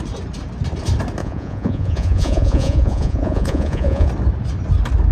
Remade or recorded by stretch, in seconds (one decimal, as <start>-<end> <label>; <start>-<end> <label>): 0.0-1.2 recorded; 1.2-4.1 remade; 4.1-5.1 recorded